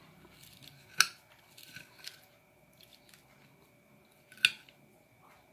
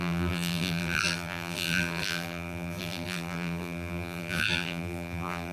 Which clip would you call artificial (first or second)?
second